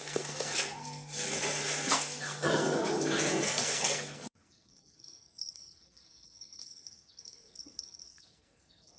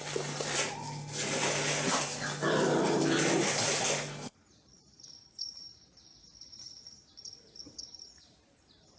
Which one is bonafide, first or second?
second